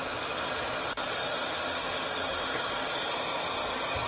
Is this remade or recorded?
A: recorded